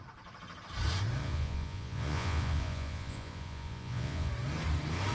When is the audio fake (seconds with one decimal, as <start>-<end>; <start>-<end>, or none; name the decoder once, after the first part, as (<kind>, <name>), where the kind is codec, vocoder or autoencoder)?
1.2-4.3 (vocoder, Vocos)